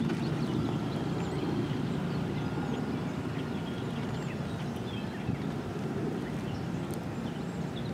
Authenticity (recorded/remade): recorded